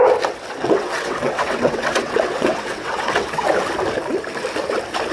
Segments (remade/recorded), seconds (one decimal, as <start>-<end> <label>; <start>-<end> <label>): 0.0-0.6 recorded; 0.6-3.5 remade; 3.5-5.1 recorded